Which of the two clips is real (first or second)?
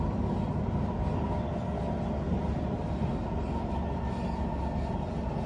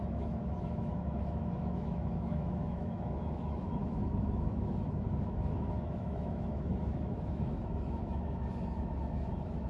first